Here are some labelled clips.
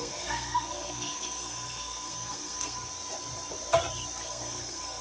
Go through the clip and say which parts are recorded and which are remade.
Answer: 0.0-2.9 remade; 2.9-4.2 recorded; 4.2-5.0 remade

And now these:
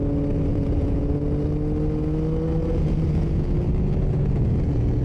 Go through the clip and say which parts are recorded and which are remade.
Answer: 0.0-0.5 recorded; 0.5-1.1 remade; 1.1-2.6 recorded; 2.6-5.0 remade

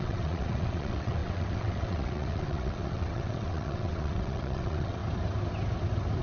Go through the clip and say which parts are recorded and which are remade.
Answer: 0.0-5.0 remade; 5.0-6.2 recorded

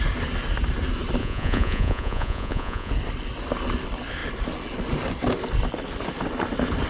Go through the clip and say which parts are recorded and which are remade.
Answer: 0.0-1.2 recorded; 1.2-2.9 remade; 2.9-6.9 recorded

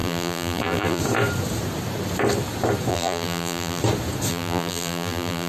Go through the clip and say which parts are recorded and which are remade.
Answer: 0.0-1.0 remade; 1.0-2.9 recorded; 2.9-3.8 remade; 3.8-4.3 recorded; 4.3-5.5 remade

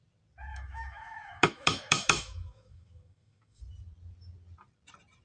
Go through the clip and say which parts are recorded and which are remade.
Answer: 0.0-0.5 recorded; 0.5-3.6 remade; 3.6-5.2 recorded

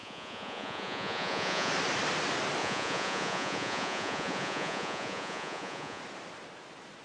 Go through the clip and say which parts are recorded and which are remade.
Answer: 0.0-1.7 remade; 1.7-2.6 recorded; 2.6-6.0 remade; 6.0-7.0 recorded